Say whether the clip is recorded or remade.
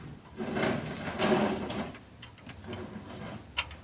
recorded